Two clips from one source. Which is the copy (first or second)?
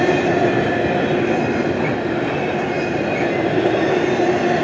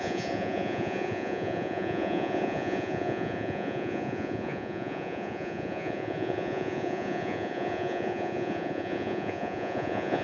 second